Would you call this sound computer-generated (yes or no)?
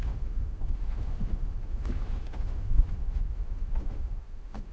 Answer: yes